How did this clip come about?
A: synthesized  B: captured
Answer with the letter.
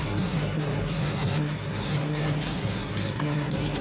A